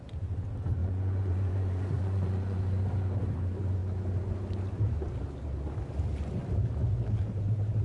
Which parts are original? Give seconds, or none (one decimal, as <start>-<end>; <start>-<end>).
0.0-0.8; 2.6-7.8